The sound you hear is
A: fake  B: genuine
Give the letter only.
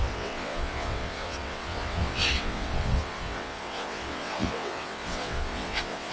A